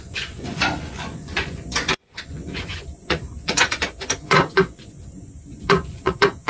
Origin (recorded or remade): remade